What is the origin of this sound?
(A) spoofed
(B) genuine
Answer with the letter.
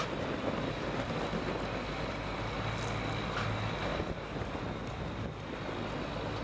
B